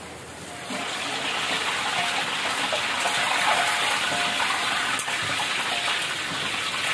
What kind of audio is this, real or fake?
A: real